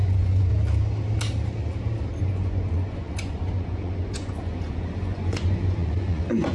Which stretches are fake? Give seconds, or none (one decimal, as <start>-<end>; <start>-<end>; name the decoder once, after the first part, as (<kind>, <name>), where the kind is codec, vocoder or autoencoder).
0.0-0.5 (vocoder, Vocos); 2.2-6.5